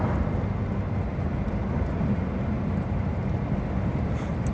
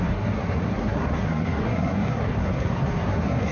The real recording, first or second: first